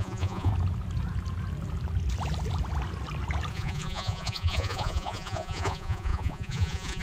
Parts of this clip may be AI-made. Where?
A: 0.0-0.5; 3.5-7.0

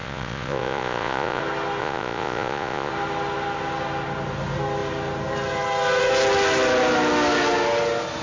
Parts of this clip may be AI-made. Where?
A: 0.0-1.4; 1.8-2.9

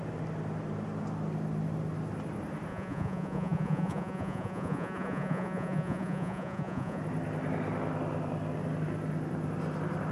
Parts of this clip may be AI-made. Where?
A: 2.7-7.0

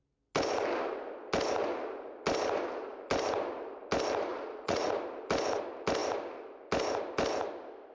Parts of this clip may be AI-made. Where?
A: 4.3-4.9